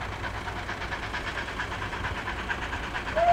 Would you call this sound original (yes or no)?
yes